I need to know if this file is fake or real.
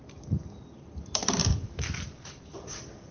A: real